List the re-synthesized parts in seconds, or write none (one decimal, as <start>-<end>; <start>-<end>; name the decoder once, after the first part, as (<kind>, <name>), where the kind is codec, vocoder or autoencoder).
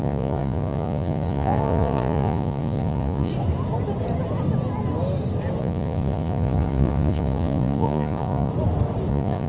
0.0-3.3 (vocoder, Vocos); 5.6-8.5; 9.1-9.5